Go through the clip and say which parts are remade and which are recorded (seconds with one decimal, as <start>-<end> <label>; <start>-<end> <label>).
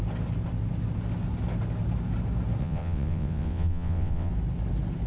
0.0-2.6 recorded; 2.6-4.3 remade; 4.3-5.1 recorded